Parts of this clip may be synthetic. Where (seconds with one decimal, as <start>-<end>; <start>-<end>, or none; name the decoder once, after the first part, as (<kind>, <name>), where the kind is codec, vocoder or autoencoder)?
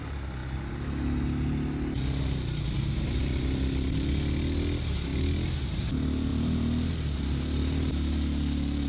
none